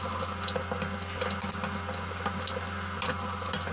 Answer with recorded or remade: recorded